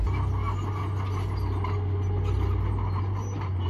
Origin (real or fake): real